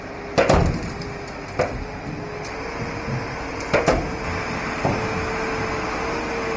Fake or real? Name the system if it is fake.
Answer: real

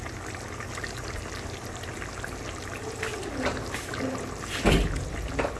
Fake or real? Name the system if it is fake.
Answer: real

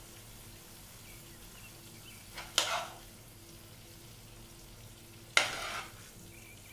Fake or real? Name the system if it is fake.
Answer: real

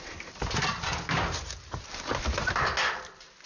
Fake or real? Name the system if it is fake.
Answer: real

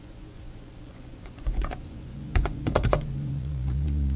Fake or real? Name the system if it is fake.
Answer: fake, vocoder, Vocos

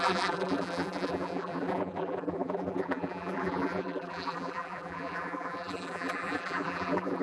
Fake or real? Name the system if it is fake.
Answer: fake, vocoder, BigVGAN v2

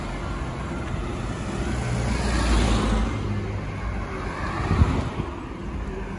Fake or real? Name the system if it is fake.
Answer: real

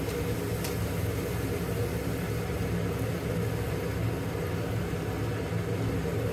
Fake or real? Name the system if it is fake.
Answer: real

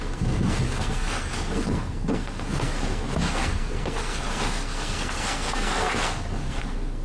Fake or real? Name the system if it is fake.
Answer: fake, codec, SNAC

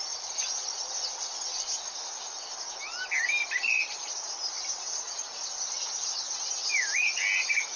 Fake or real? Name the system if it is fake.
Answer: real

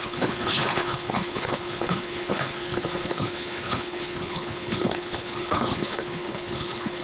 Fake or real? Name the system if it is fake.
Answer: fake, codec, HILCodec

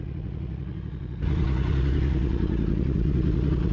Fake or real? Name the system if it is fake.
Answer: fake, vocoder, Vocos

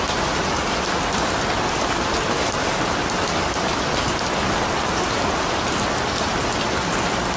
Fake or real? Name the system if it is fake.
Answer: real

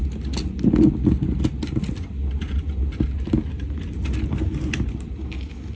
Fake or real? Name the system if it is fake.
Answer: real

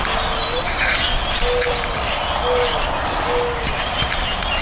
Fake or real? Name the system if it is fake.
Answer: real